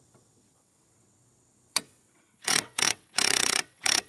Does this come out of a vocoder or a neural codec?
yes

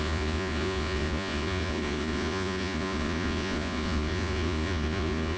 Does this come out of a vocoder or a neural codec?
yes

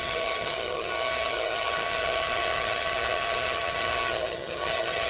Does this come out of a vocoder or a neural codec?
yes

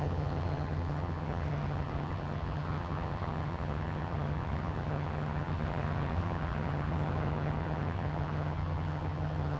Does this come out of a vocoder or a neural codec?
yes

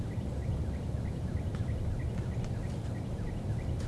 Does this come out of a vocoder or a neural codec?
no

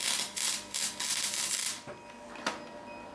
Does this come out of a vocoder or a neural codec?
no